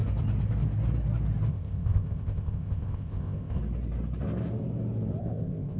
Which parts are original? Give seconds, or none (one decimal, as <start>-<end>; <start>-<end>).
0.0-1.5; 3.6-5.2